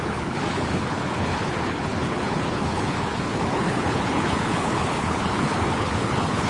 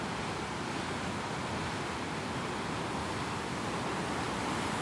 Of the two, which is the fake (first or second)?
first